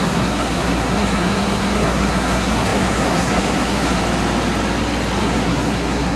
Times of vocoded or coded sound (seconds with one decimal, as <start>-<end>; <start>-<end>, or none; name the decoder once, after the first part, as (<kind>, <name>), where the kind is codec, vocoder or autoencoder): 0.0-4.0 (codec, SNAC); 5.2-6.2